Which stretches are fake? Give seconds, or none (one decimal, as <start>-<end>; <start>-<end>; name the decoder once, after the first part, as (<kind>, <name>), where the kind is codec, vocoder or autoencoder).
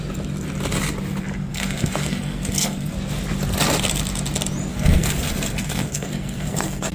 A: 1.5-2.9 (codec, SNAC); 4.7-6.9